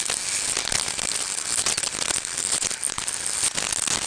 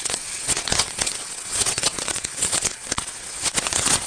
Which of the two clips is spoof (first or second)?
second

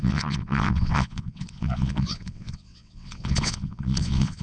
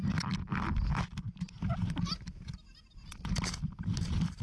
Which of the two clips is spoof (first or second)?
first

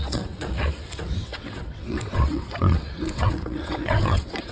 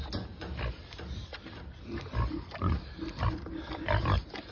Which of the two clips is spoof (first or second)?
first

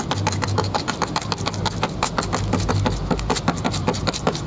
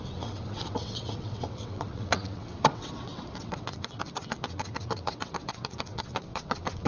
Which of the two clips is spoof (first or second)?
second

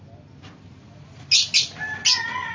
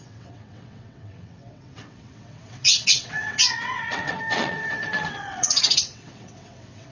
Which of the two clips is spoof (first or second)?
second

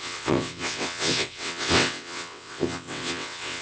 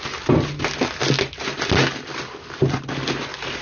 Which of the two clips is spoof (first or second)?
first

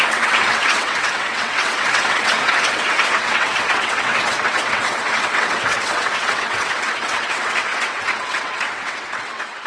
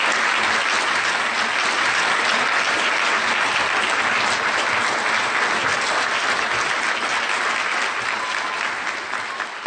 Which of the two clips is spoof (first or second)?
first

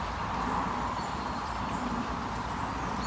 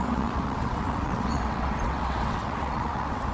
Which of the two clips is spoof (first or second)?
second